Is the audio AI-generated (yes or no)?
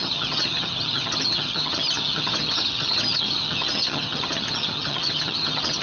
yes